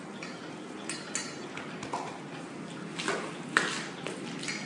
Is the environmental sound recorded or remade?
recorded